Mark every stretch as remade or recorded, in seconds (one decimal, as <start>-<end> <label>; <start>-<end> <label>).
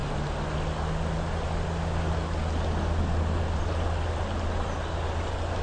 0.0-5.6 recorded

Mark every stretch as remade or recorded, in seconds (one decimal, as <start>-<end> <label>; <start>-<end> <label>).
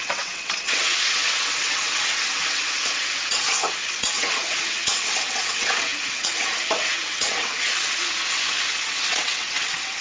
0.0-10.0 remade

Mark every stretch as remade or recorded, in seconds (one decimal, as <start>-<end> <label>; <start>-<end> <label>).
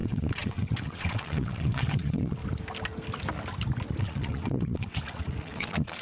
0.0-2.4 remade; 2.4-4.0 recorded; 4.0-6.0 remade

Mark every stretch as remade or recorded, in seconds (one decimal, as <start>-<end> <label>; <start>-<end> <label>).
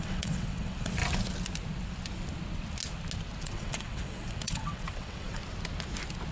0.0-1.0 remade; 1.0-3.4 recorded; 3.4-5.4 remade; 5.4-6.3 recorded